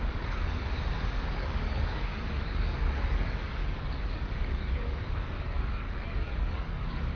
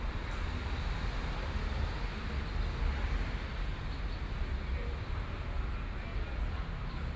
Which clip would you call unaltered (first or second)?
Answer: second